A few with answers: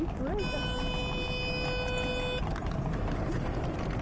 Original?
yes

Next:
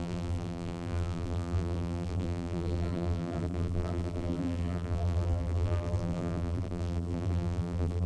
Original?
no